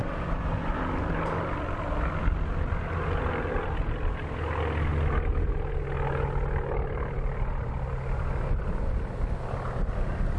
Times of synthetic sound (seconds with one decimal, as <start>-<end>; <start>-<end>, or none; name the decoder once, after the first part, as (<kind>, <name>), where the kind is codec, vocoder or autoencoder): none